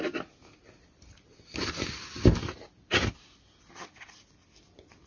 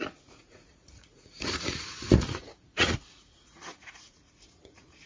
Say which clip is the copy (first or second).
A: second